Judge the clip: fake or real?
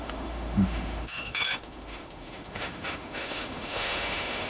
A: fake